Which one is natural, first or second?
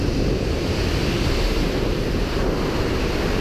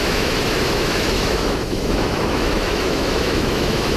first